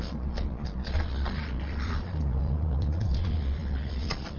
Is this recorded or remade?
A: remade